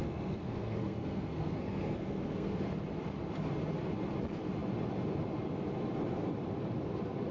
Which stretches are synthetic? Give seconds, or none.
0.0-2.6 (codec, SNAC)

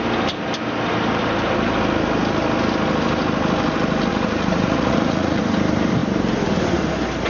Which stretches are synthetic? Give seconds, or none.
4.1-5.4 (vocoder, Vocos)

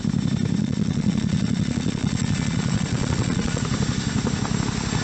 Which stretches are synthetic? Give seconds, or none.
0.6-3.6 (vocoder, Vocos)

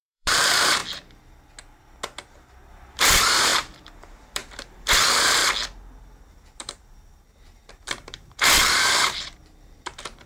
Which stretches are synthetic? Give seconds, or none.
0.0-0.8 (vocoder, BigVGAN v2); 2.7-5.4; 6.3-10.3

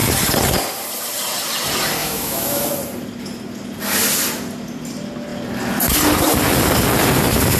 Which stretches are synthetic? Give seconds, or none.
2.0-2.6 (autoencoder, DAC-VAE)

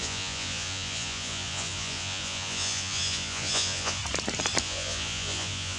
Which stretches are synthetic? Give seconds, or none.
0.0-4.0 (vocoder, Vocos); 4.6-5.8

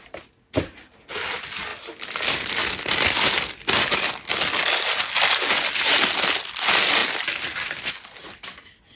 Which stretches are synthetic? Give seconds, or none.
none

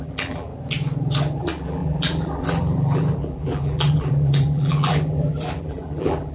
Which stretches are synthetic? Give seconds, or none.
0.0-0.5 (vocoder, BigVGAN v2); 1.4-6.3